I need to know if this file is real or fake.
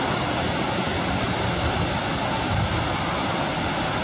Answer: real